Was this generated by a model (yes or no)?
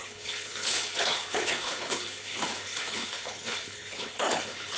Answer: yes